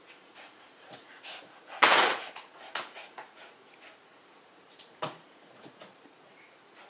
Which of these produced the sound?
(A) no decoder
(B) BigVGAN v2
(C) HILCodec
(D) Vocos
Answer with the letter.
D